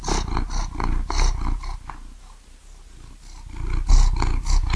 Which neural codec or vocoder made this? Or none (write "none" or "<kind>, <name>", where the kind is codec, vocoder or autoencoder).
none